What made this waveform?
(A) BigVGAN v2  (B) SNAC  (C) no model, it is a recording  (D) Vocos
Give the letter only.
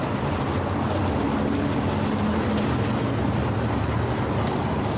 C